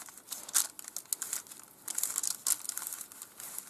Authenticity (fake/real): real